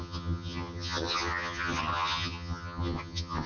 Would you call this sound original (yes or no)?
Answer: no